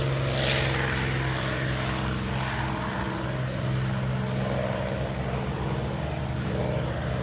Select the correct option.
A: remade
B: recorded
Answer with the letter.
B